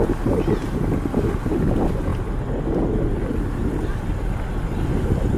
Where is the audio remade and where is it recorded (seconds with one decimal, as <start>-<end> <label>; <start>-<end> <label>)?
0.0-5.4 recorded

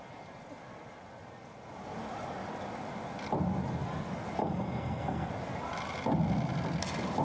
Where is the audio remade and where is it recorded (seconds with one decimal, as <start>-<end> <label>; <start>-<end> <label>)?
0.0-4.4 recorded; 4.4-5.3 remade; 5.3-7.2 recorded